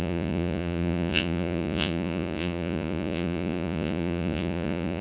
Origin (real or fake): fake